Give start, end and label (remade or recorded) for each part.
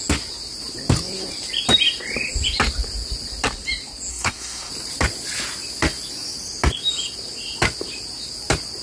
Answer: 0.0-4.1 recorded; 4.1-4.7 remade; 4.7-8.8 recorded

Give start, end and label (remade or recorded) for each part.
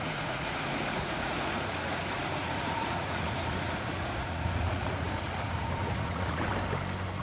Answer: 0.0-6.5 remade; 6.5-7.2 recorded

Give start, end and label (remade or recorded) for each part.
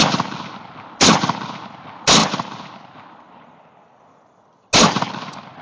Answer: 0.0-5.6 recorded